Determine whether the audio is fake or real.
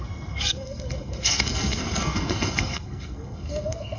fake